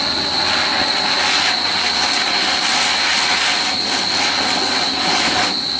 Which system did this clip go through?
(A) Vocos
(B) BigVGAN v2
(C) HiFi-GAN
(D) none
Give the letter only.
D